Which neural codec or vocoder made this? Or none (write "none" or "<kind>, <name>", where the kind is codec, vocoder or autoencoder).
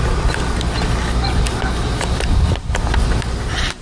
none